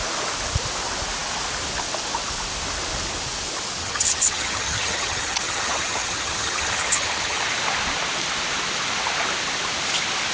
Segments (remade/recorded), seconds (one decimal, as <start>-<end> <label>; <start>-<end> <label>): 0.0-3.8 recorded; 3.8-7.4 remade; 7.4-10.3 recorded